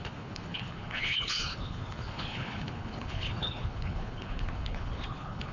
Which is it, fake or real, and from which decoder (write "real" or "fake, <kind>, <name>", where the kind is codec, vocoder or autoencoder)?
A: fake, codec, HILCodec